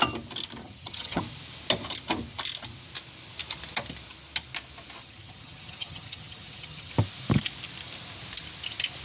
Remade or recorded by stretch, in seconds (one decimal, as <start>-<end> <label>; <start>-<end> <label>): 0.0-0.6 recorded; 0.6-1.2 remade; 1.2-5.0 recorded; 5.0-6.9 remade; 6.9-9.0 recorded